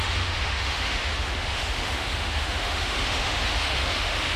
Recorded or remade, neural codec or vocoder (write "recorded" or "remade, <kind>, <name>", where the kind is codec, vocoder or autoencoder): remade, autoencoder, DAC-VAE